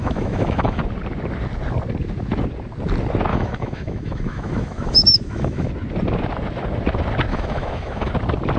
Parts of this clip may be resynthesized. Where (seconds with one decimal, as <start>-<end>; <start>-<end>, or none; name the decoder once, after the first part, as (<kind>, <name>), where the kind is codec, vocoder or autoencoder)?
0.0-0.8 (autoencoder, DAC-VAE); 3.3-5.7; 7.3-8.1